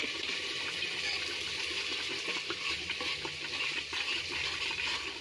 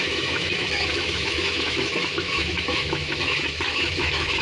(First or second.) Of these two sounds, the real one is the first